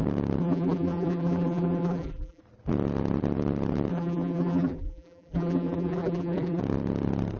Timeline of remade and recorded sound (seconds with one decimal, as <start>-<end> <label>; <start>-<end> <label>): 0.0-0.4 recorded; 0.4-2.4 remade; 2.4-3.9 recorded; 3.9-6.6 remade; 6.6-7.4 recorded